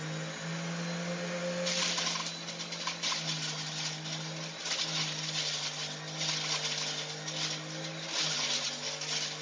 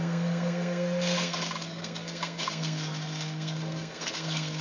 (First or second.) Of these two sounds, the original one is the first